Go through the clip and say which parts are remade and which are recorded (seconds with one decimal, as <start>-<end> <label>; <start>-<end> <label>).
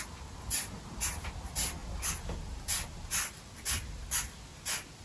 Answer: 0.0-5.0 recorded